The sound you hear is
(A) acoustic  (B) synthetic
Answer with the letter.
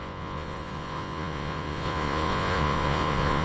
B